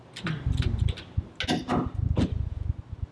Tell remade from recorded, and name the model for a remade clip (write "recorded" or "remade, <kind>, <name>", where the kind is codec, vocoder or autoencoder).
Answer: recorded